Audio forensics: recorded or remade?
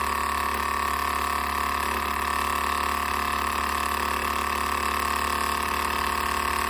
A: recorded